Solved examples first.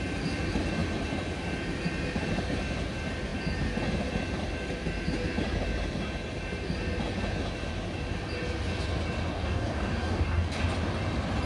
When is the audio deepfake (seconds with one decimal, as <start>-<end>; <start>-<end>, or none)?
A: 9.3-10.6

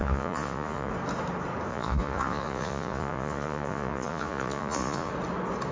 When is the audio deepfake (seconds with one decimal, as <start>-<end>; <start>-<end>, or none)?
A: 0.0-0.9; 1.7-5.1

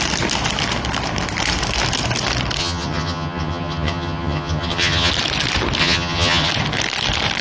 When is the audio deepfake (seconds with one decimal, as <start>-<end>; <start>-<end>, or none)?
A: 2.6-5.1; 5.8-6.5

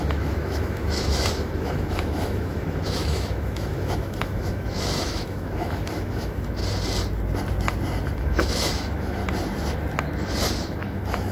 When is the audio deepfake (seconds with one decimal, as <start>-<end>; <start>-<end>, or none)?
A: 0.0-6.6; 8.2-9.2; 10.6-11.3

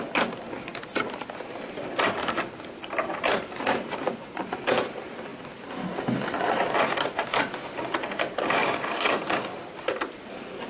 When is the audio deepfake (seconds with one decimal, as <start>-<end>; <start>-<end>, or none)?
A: 8.6-9.6